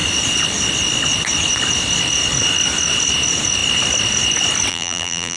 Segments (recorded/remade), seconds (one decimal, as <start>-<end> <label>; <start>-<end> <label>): 0.0-4.7 recorded; 4.7-5.4 remade